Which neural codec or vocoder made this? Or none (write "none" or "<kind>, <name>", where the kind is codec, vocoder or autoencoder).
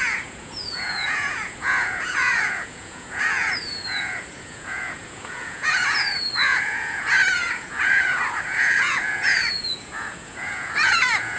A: vocoder, Vocos